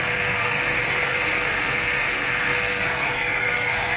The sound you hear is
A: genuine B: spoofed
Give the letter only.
B